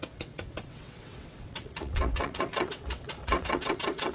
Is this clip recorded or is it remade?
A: remade